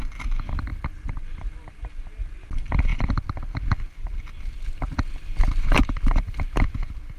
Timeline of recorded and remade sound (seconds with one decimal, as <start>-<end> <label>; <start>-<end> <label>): 0.0-7.2 recorded